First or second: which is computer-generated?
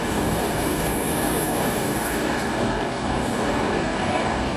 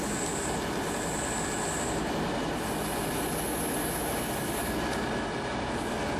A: first